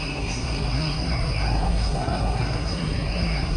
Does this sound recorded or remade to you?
remade